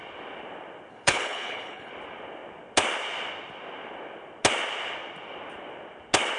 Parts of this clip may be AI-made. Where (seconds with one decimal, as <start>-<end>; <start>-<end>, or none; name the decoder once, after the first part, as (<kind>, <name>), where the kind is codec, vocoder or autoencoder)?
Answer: 0.9-1.9 (codec, HILCodec)